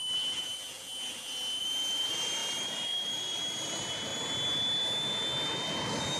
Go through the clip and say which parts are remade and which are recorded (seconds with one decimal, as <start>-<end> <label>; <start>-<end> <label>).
0.0-0.5 remade; 0.5-1.6 recorded; 1.6-4.1 remade; 4.1-6.2 recorded